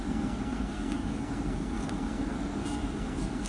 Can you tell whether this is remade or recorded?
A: remade